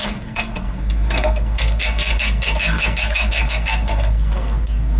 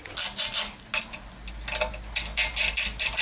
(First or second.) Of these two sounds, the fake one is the first